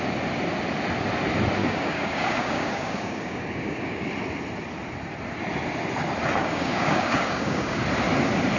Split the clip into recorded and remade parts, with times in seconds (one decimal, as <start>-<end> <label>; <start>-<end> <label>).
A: 0.0-1.6 recorded; 1.6-4.1 remade; 4.1-6.4 recorded; 6.4-7.8 remade; 7.8-8.6 recorded